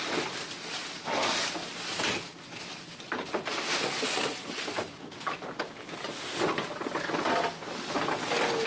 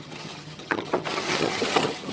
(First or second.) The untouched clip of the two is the first